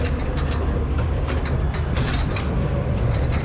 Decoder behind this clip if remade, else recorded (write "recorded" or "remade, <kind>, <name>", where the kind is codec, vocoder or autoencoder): recorded